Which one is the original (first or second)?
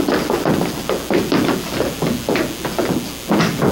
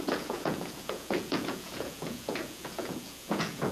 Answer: first